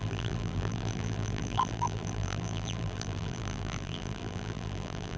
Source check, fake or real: fake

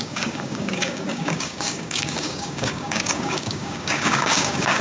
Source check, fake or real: fake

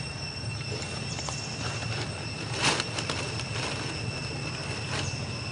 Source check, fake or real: real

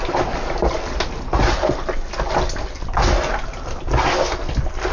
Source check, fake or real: real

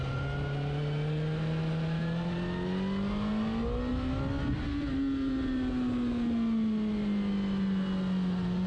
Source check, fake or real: real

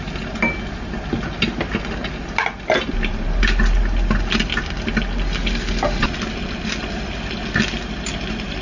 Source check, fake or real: real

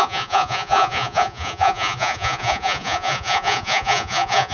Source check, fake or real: fake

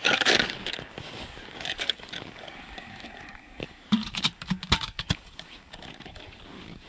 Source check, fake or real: fake